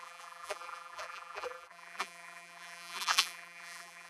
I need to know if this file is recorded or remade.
remade